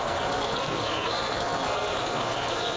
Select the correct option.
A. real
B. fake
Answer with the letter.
B